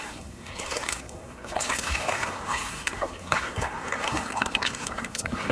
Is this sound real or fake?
fake